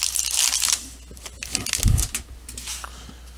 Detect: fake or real real